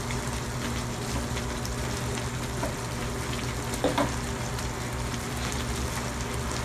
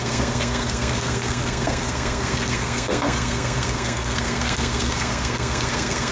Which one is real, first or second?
first